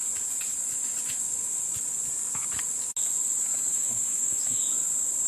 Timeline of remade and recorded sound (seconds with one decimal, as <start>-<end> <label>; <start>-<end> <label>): 0.0-3.7 recorded; 3.7-4.6 remade; 4.6-5.3 recorded